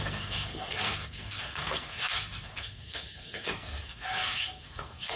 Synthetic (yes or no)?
yes